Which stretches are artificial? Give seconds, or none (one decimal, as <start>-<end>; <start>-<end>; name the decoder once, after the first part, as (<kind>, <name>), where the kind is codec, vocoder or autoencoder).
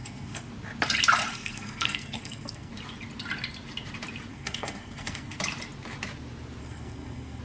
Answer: 0.0-0.5 (codec, SNAC); 1.3-2.7; 4.3-5.4; 6.6-7.4